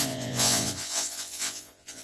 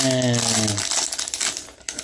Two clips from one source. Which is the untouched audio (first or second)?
second